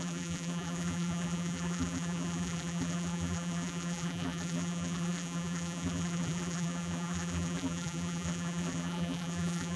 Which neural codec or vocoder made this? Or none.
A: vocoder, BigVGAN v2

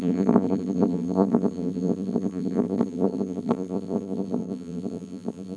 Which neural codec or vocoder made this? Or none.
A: vocoder, BigVGAN v2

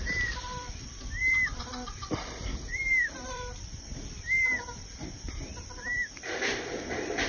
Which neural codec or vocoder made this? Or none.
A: vocoder, BigVGAN v2